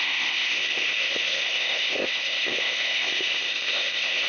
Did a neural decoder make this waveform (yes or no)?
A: yes